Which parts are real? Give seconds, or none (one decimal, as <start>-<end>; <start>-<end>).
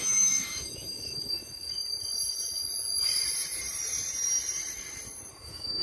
1.8-5.3